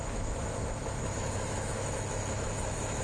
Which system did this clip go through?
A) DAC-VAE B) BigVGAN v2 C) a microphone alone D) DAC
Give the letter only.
A